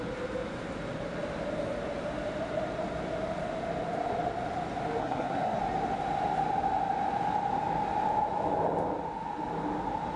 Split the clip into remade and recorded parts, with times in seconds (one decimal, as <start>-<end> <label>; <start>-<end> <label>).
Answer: 0.0-5.0 recorded; 5.0-5.6 remade; 5.6-10.2 recorded